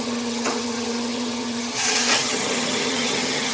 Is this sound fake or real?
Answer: fake